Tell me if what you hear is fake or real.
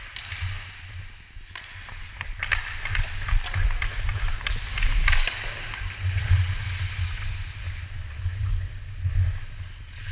real